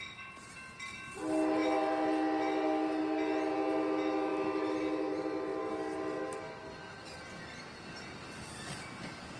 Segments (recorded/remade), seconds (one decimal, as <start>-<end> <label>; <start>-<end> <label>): 0.0-9.4 recorded